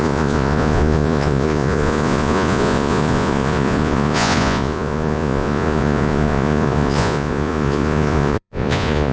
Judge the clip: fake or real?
fake